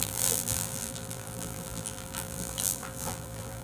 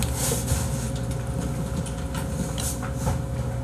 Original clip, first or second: second